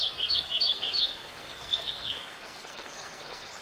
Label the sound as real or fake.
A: fake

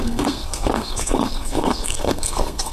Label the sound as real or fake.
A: fake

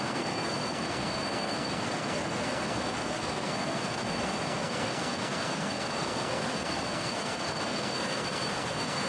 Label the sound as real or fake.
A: fake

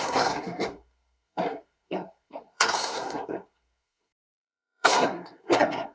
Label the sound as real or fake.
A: fake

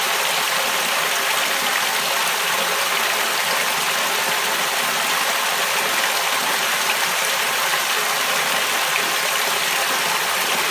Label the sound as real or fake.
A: real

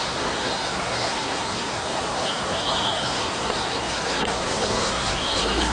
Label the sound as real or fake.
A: fake